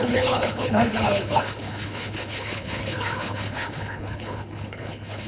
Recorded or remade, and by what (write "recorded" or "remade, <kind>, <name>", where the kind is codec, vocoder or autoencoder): remade, codec, HILCodec